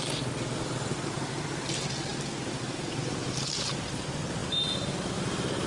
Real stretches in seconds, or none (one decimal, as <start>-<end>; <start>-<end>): 0.0-5.7

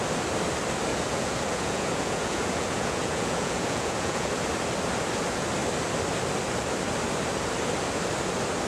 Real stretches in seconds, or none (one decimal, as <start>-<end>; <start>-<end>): 0.0-0.9; 4.3-8.7

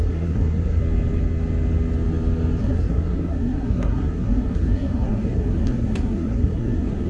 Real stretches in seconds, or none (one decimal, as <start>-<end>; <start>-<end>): 0.8-2.6